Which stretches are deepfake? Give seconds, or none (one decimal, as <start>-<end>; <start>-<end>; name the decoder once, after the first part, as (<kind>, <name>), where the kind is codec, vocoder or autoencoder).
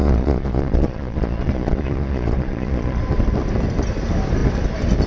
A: 0.0-3.0 (vocoder, Vocos)